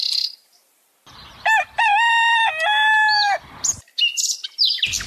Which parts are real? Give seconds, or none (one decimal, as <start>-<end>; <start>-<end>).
0.0-5.1